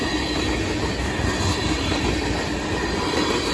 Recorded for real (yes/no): yes